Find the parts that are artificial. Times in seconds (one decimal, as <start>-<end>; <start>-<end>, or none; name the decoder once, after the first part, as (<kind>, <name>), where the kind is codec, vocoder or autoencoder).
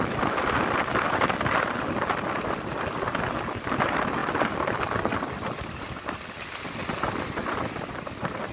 none